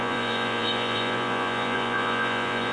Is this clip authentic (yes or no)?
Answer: no